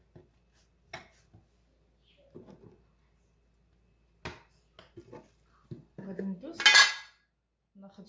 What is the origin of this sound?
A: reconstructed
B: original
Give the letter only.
B